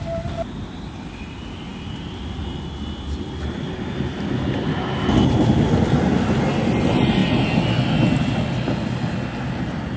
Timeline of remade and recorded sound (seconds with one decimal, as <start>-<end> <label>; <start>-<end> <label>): 0.0-10.0 recorded